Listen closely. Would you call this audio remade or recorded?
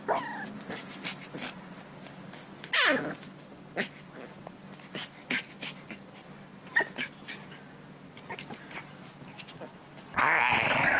recorded